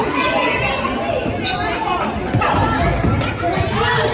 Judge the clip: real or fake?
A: real